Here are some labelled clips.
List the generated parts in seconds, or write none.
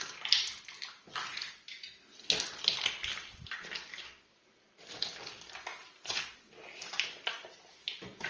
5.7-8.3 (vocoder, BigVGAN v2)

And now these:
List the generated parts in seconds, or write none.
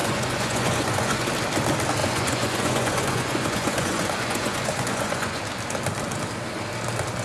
0.0-1.3 (vocoder, Vocos); 2.0-5.4